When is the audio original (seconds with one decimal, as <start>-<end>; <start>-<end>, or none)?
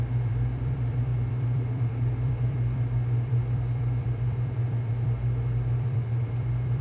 none